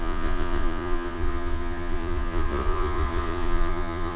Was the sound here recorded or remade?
remade